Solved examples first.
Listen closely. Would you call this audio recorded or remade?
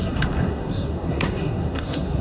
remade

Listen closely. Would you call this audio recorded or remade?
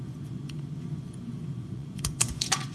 remade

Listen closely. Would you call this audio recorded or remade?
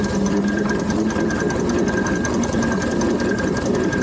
recorded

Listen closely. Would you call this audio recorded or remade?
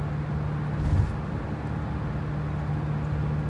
recorded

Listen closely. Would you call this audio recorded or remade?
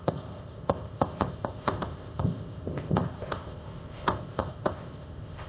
remade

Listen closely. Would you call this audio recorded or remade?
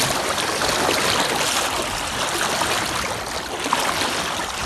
recorded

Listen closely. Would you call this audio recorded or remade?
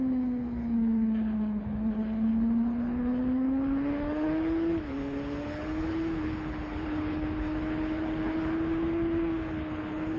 remade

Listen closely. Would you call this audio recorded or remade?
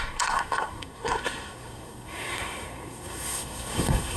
remade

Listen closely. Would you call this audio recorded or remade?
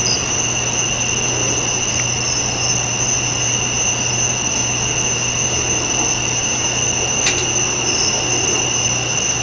recorded